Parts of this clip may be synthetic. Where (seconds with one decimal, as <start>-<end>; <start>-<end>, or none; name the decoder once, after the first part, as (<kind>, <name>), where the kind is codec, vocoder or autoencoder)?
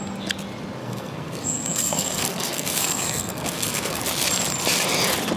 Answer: 0.8-4.0 (codec, SNAC)